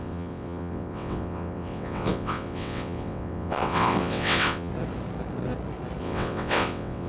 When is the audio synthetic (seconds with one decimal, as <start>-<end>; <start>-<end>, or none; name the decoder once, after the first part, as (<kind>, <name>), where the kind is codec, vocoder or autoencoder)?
0.0-4.7 (vocoder, WaveNeXt); 6.0-7.1